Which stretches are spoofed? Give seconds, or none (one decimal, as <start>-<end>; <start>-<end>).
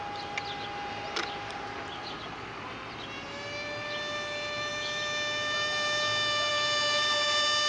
none